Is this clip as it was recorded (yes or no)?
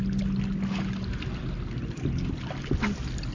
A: yes